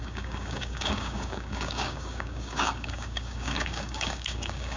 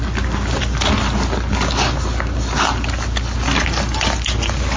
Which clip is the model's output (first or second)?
first